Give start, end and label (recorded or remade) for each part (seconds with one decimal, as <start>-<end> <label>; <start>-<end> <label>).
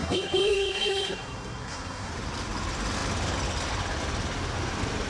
0.0-2.1 remade; 2.1-5.1 recorded